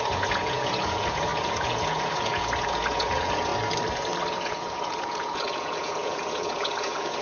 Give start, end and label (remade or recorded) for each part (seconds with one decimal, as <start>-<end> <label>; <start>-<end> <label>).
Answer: 0.0-3.5 remade; 3.5-4.3 recorded; 4.3-7.2 remade